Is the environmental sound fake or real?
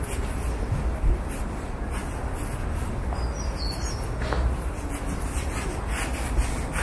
real